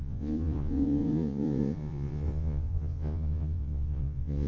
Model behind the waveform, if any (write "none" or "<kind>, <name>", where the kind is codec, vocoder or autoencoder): vocoder, Vocos